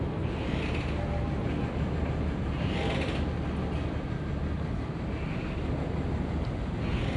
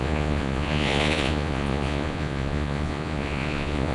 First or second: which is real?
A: first